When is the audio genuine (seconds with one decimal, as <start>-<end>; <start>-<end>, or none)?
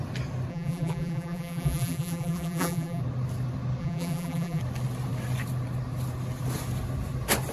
0.0-0.5; 3.0-3.8; 4.6-7.5